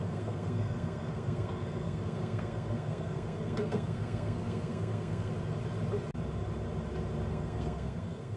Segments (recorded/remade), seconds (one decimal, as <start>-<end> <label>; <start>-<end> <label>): 0.0-5.3 remade; 5.3-7.3 recorded; 7.3-8.4 remade